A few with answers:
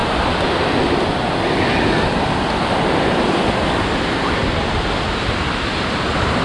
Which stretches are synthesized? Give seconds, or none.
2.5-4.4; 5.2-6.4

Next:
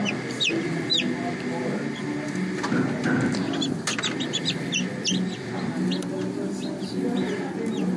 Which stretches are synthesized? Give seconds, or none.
none

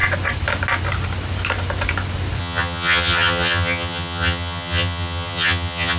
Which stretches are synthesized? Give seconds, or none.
2.4-6.0

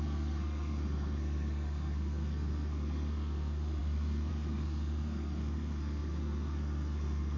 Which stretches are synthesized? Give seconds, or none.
0.0-7.4

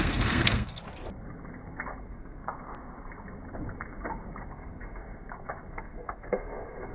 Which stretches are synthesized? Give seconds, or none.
0.0-0.8; 2.0-2.4; 4.5-5.0; 5.7-6.9